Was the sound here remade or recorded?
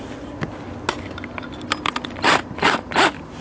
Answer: recorded